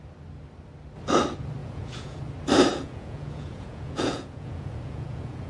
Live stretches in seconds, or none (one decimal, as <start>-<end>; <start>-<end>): 0.0-1.6; 2.2-2.7

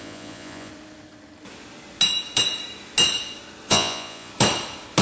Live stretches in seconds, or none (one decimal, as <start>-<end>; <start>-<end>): 0.7-3.7; 4.3-5.0

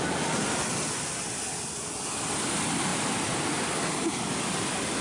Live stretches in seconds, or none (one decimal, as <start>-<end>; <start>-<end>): 0.0-5.0

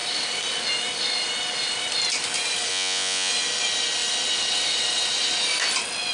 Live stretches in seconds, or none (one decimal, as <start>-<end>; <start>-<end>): 0.0-2.7; 3.3-6.1

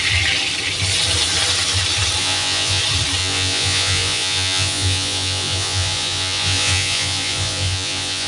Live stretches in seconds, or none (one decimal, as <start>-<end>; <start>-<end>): 0.0-2.2; 2.8-3.2

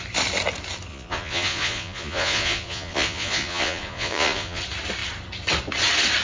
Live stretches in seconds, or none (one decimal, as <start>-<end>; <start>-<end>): 0.0-0.9; 4.6-6.2

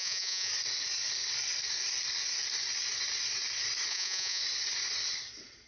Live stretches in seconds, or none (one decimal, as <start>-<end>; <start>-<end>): 0.5-3.9; 4.4-5.7

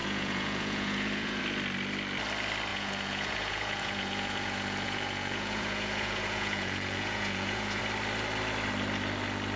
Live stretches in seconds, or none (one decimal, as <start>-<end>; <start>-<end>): 1.4-2.7; 7.8-9.6